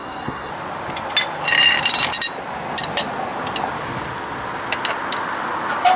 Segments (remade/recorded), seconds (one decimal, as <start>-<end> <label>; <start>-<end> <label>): 0.0-0.5 remade; 0.5-6.0 recorded